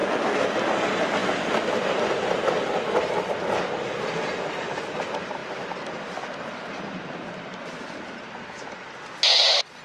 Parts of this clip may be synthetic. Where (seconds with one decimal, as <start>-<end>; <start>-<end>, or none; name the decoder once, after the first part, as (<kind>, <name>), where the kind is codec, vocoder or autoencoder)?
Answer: 0.0-0.5 (autoencoder, DAC-VAE)